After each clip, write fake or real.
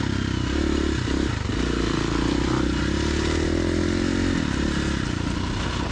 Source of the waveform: real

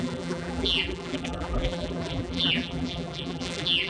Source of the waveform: fake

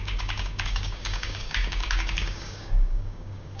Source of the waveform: fake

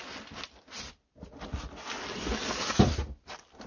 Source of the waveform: real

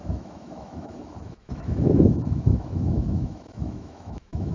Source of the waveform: fake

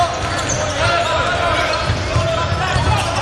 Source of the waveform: real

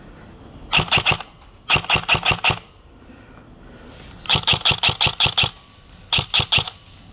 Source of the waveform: real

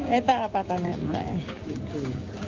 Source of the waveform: fake